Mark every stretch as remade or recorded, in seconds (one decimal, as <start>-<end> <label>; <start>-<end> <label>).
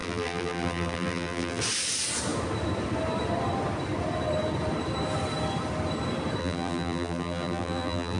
0.0-1.6 remade; 1.6-6.4 recorded; 6.4-8.2 remade